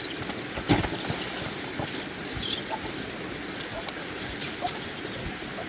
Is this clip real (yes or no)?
yes